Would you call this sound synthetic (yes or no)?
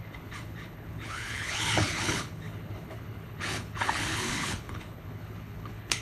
yes